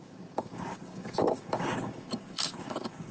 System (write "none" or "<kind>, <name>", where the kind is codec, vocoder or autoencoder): codec, DAC